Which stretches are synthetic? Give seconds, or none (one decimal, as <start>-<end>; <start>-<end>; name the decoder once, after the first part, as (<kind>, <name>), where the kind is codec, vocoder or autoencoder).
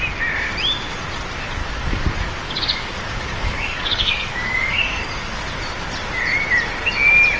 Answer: 1.6-5.4 (codec, DAC)